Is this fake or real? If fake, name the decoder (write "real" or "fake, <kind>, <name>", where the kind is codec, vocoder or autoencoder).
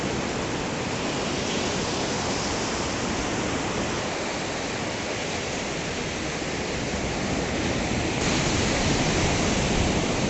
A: real